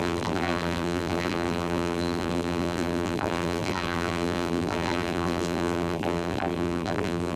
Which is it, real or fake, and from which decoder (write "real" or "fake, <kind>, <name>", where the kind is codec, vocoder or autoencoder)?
fake, vocoder, BigVGAN v2